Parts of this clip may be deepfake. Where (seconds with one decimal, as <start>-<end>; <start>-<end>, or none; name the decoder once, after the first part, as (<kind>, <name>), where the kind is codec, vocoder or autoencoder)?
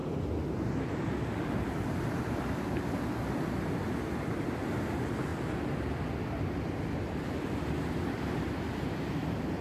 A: none